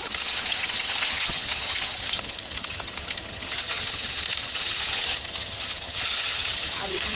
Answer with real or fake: fake